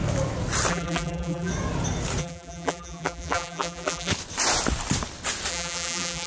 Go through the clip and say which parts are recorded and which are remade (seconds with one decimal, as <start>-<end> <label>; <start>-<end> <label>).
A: 0.0-0.7 recorded; 0.7-1.5 remade; 1.5-2.2 recorded; 2.2-4.1 remade; 4.1-5.5 recorded; 5.5-6.3 remade

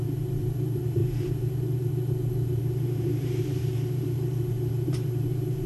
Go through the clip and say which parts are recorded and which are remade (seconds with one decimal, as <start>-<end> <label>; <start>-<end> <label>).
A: 0.0-5.7 remade

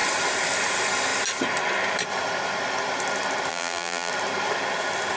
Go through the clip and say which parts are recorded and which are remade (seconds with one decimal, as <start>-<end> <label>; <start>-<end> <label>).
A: 0.0-3.5 recorded; 3.5-4.1 remade; 4.1-5.2 recorded

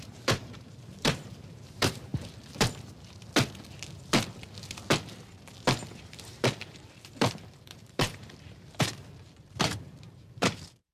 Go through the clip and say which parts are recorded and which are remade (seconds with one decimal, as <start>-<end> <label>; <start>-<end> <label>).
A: 0.0-2.1 remade; 2.1-6.0 recorded; 6.0-10.9 remade

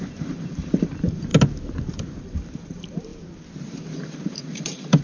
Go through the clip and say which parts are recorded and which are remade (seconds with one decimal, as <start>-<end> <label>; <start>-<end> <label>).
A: 0.0-1.3 remade; 1.3-2.0 recorded; 2.0-3.1 remade; 3.1-3.6 recorded; 3.6-5.0 remade